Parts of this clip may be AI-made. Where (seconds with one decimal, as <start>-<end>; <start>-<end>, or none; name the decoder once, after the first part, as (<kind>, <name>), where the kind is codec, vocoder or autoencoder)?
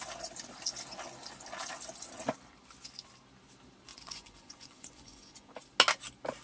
3.9-5.5 (vocoder, Vocos)